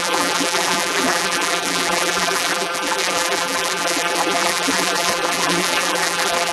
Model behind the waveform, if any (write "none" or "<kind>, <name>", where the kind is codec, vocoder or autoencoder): vocoder, BigVGAN v2